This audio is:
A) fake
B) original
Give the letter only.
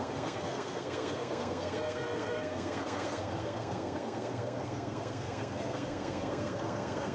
A